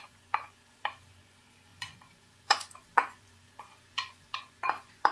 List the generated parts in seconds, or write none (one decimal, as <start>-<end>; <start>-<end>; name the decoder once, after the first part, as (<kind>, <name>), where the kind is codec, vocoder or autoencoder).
0.0-5.1 (vocoder, Vocos)